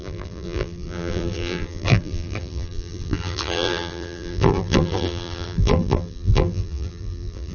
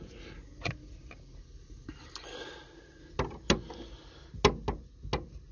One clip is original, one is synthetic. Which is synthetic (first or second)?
first